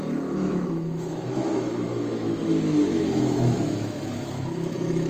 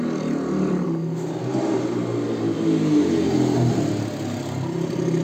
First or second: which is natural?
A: second